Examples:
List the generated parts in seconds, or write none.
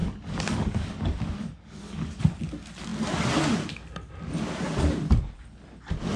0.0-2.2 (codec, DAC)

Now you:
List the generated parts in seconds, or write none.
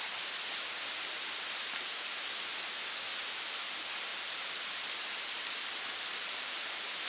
4.1-4.8 (vocoder, BigVGAN v2); 6.1-7.1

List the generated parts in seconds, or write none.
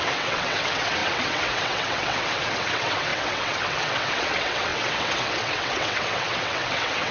0.0-7.1 (vocoder, WaveNeXt)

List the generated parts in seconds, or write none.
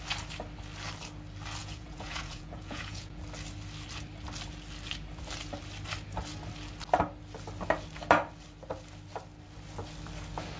1.6-3.2 (vocoder, Vocos)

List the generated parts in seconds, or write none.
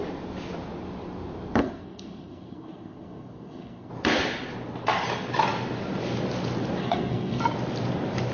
1.6-3.9 (codec, SNAC); 6.8-7.4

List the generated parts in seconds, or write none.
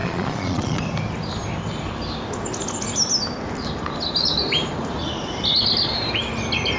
0.0-0.8 (vocoder, Vocos)